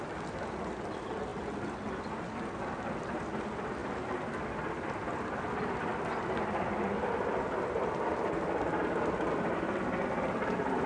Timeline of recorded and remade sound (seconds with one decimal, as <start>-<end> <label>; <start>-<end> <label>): 0.0-10.9 recorded